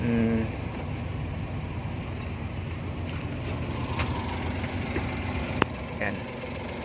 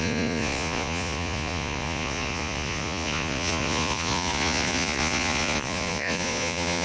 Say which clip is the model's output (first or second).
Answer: second